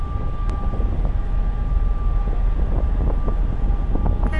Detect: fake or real real